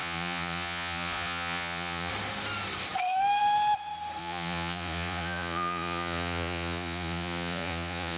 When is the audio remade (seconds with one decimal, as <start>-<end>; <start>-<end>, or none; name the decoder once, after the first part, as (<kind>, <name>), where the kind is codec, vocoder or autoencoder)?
0.0-2.1 (vocoder, Vocos); 4.2-8.2